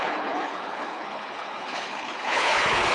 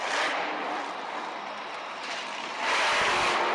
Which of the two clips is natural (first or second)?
second